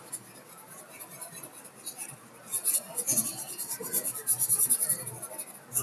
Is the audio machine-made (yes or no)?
no